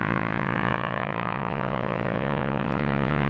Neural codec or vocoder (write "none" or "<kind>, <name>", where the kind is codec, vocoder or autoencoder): vocoder, WaveNeXt